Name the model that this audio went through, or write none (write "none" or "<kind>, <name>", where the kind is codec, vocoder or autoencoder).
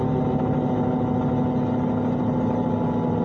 none